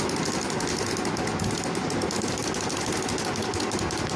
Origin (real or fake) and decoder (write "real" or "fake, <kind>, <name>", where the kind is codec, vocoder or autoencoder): real